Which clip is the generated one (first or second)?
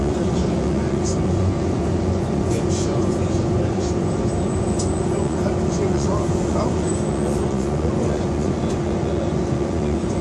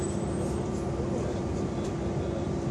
first